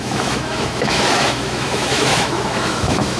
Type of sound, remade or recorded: remade